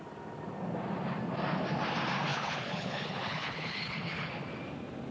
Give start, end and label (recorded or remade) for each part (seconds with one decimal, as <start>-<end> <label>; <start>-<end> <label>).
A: 0.0-2.3 recorded; 2.3-4.3 remade; 4.3-5.1 recorded